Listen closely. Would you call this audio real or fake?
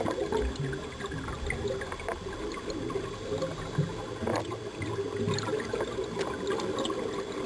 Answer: real